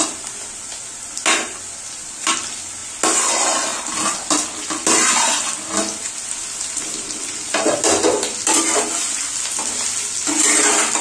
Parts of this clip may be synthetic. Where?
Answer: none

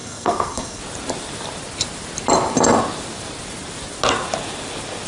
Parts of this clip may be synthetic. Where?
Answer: 0.0-0.8 (codec, SNAC)

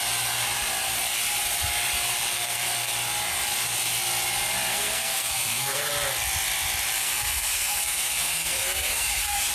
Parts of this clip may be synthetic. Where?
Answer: 2.3-2.9 (codec, SNAC); 4.7-5.9; 7.0-9.5

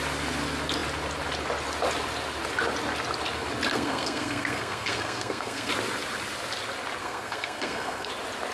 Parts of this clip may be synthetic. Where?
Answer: 3.7-5.7 (codec, SNAC); 7.0-8.1

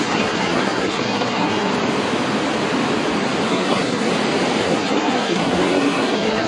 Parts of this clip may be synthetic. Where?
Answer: 0.0-1.7 (codec, SNAC); 3.5-4.1; 4.6-6.5

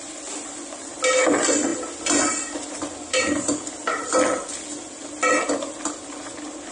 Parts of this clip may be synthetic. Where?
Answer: none

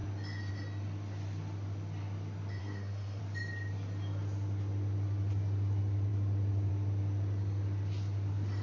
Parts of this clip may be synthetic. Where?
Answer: 2.6-3.2 (codec, SNAC)